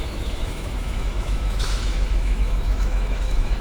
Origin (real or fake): fake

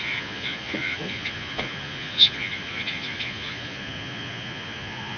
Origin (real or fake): fake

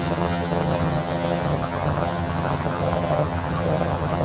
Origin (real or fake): fake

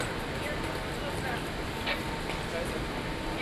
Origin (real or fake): real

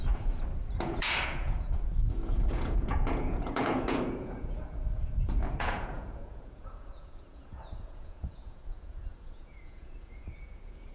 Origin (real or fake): fake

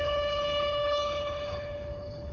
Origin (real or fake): fake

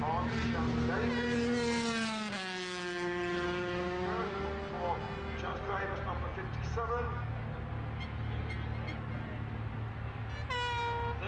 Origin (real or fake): real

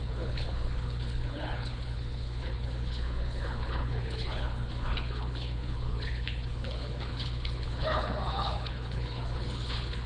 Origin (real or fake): fake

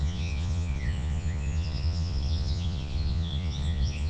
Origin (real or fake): fake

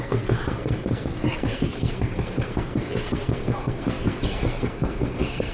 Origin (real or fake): fake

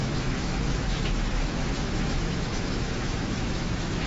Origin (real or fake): fake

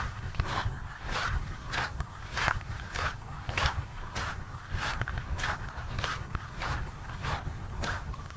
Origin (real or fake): fake